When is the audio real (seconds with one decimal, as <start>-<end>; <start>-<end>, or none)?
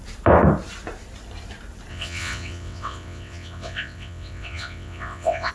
0.0-1.9